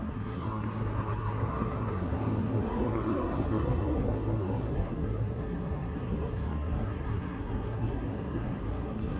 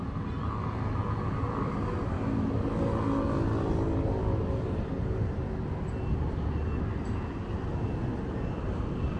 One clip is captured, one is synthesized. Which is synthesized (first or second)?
first